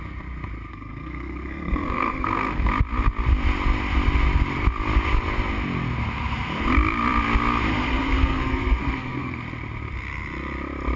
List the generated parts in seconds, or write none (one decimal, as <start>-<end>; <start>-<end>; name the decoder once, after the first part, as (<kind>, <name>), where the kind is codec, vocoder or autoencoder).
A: 0.7-2.7 (codec, SNAC); 7.7-9.4